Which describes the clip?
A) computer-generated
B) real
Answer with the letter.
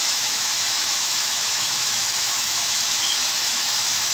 A